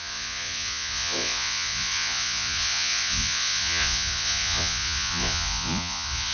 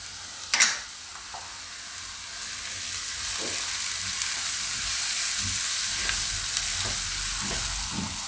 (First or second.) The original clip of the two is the second